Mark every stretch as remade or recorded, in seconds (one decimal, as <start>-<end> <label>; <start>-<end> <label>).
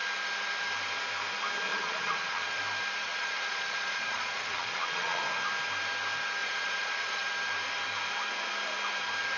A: 0.0-1.7 recorded; 1.7-2.6 remade; 2.6-3.0 recorded; 3.0-5.2 remade; 5.2-6.4 recorded; 6.4-7.3 remade; 7.3-9.4 recorded